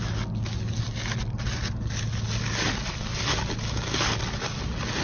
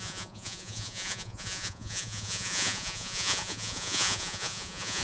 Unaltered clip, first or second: first